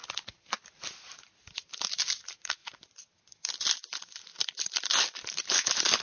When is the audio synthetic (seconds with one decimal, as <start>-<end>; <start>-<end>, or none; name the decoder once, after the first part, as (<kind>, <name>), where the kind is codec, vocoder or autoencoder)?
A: 4.3-6.0 (vocoder, BigVGAN v2)